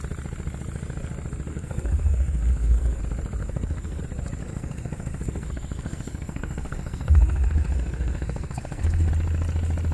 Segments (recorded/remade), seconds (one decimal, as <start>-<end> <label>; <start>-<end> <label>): 0.0-1.5 recorded; 1.5-3.0 remade; 3.0-3.4 recorded; 3.4-4.0 remade; 4.0-4.4 recorded; 4.4-9.1 remade; 9.1-9.9 recorded